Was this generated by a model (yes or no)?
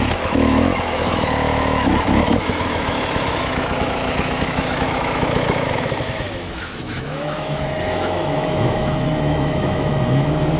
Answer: yes